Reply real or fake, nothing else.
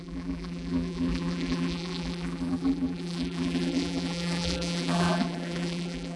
fake